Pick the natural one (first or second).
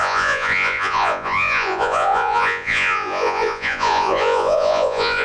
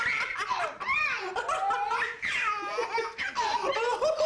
second